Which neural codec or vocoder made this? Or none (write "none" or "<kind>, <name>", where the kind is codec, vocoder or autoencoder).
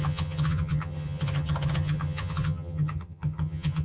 vocoder, HiFi-GAN